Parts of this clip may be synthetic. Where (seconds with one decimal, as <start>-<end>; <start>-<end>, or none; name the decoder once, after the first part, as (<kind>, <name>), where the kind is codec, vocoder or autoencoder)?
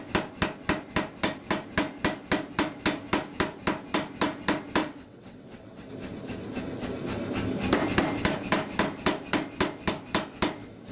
4.8-5.9 (vocoder, WaveNeXt)